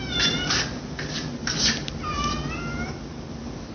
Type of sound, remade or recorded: recorded